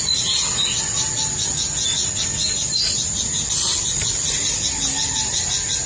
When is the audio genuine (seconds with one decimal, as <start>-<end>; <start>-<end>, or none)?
0.0-5.9